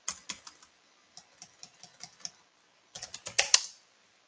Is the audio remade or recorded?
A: recorded